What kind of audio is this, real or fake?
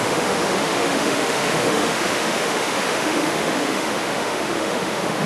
fake